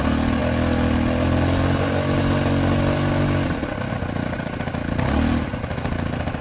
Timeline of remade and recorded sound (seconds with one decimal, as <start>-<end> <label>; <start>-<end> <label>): 0.0-6.4 recorded